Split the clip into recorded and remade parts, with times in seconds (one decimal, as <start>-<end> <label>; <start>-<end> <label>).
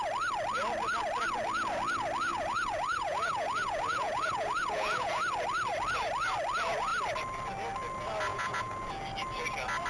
0.0-2.3 recorded; 2.3-5.1 remade; 5.1-8.3 recorded; 8.3-8.9 remade; 8.9-9.9 recorded